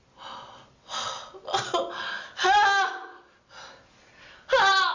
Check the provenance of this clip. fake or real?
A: real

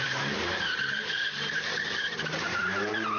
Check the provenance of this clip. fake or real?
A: fake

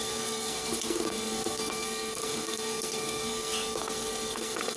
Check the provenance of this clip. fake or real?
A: fake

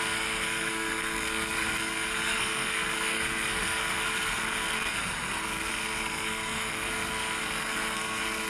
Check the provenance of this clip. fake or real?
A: fake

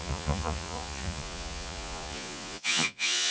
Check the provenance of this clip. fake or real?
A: fake